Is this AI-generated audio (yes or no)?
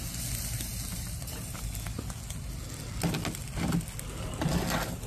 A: no